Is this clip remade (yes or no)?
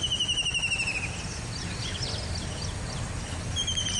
no